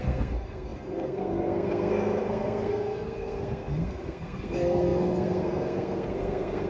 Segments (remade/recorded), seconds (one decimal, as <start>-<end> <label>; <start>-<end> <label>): 0.0-6.7 remade